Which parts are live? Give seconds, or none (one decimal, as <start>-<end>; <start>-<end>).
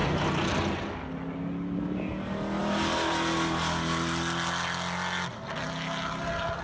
0.0-6.6